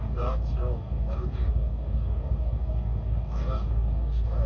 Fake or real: fake